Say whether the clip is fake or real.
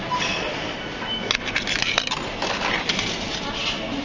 real